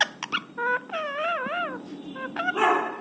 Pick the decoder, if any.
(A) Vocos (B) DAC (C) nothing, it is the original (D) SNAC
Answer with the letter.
C